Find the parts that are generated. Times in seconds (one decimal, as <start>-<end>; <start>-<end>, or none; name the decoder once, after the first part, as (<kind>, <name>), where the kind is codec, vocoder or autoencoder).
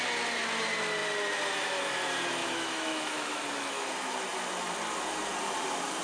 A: 2.4-3.9 (autoencoder, DAC-VAE)